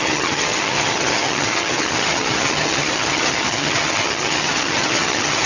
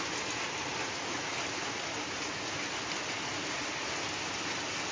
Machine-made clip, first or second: first